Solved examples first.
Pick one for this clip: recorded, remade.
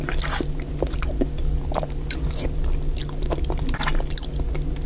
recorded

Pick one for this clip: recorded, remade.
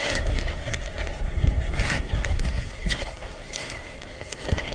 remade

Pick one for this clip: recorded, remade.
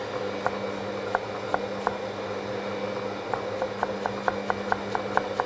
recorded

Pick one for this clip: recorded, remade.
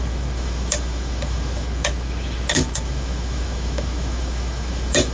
remade